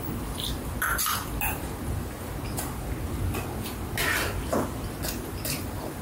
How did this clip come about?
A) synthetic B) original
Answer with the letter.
B